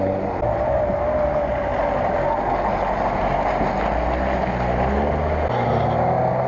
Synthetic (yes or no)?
no